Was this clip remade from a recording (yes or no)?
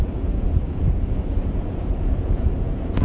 yes